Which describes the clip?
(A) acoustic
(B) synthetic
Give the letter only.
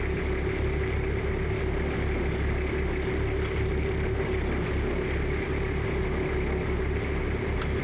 A